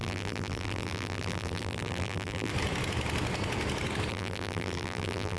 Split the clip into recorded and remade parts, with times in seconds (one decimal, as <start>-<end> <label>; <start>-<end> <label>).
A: 0.0-2.5 remade; 2.5-4.1 recorded; 4.1-5.4 remade